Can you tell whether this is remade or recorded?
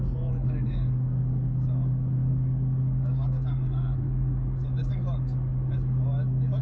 remade